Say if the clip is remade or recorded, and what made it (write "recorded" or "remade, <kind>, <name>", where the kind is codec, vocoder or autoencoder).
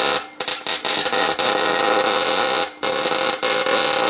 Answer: recorded